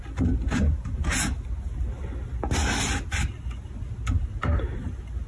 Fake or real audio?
real